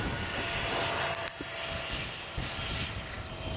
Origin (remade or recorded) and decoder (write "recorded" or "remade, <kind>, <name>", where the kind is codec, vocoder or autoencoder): recorded